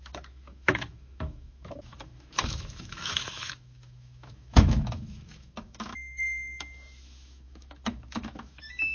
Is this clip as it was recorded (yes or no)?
no